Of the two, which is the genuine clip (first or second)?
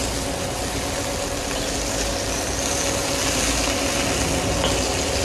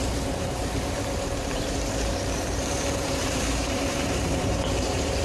first